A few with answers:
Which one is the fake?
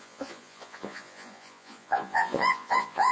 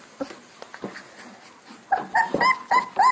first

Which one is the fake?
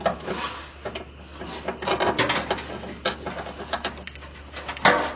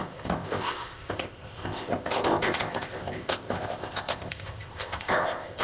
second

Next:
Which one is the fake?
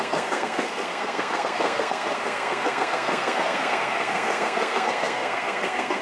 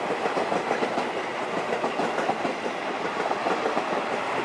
first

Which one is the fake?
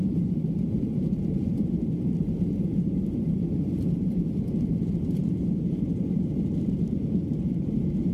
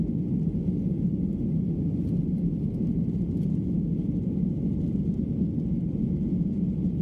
first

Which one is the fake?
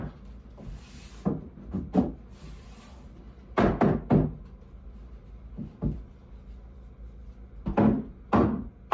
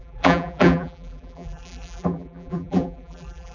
second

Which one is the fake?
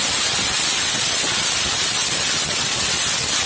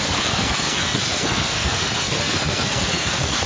second